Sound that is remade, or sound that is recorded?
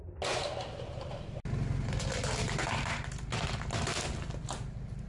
recorded